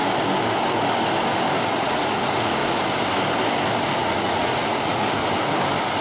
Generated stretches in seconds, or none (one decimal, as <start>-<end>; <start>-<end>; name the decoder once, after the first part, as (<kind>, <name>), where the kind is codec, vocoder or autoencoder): 1.7-2.6 (vocoder, Vocos); 4.0-5.2